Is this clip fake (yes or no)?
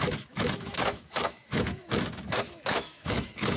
yes